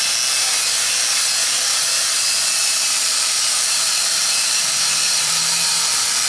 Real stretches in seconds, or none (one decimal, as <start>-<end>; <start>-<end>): 0.0-2.6; 5.4-6.3